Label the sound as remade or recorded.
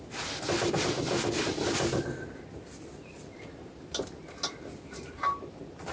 recorded